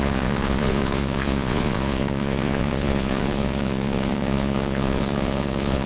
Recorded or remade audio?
remade